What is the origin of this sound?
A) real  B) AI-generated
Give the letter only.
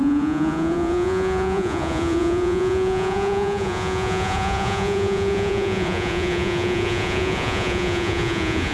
B